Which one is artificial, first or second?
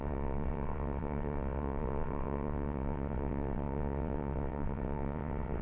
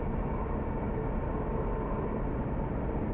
first